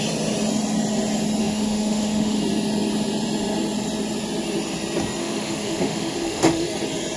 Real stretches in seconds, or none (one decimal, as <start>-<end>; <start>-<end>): 0.0-1.4; 2.4-5.2; 6.7-7.2